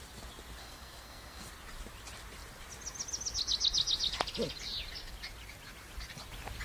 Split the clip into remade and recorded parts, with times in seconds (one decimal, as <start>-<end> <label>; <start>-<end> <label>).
0.0-0.6 recorded; 0.6-1.5 remade; 1.5-6.6 recorded